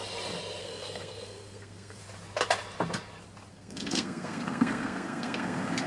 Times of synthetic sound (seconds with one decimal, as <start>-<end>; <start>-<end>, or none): 0.6-2.0; 3.5-5.9